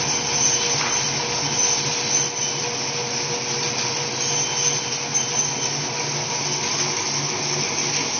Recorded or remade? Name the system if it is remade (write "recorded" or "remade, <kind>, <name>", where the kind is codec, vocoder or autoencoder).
recorded